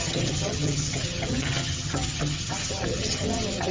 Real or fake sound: fake